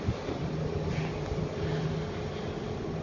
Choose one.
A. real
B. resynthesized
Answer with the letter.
A